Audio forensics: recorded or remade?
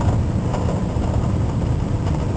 recorded